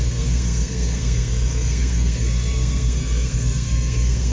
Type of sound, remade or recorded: remade